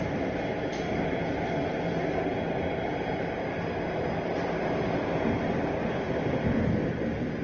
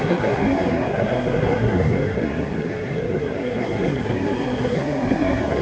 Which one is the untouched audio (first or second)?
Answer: first